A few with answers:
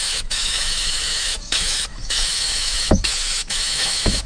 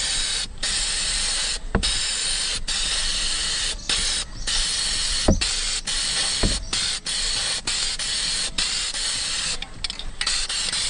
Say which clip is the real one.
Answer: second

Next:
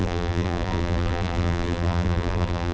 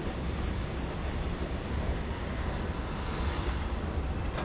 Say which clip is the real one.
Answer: second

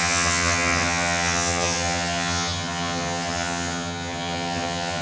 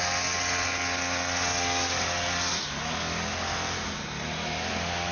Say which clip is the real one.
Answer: second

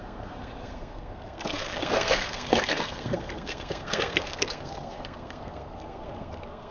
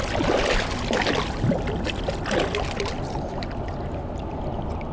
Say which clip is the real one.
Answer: second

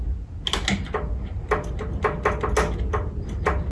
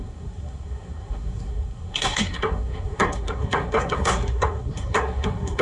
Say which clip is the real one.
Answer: first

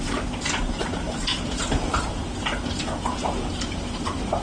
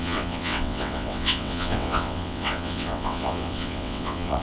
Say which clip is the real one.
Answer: first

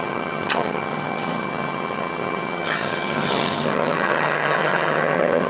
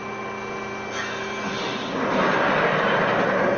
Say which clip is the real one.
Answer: second